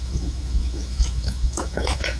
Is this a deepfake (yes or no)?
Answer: yes